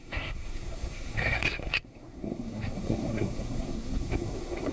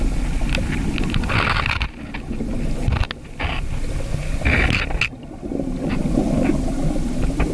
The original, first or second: second